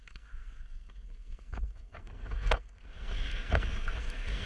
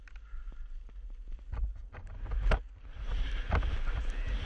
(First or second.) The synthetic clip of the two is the first